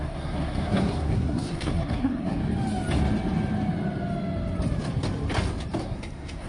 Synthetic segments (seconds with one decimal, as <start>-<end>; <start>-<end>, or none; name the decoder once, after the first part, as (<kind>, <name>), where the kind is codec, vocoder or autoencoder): 0.0-2.4 (codec, SNAC); 5.8-6.5